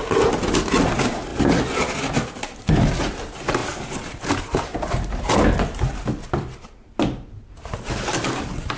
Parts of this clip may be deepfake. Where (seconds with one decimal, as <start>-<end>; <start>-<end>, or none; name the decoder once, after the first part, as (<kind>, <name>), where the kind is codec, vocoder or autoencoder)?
none